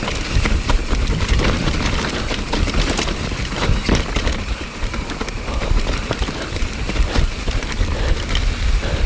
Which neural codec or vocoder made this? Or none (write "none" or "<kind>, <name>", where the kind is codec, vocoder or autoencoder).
none